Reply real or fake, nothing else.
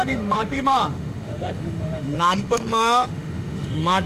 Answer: fake